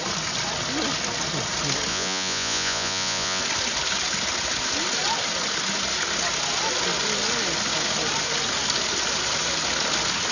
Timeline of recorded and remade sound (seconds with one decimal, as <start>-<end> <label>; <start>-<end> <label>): 0.0-1.9 recorded; 1.9-3.4 remade; 3.4-10.3 recorded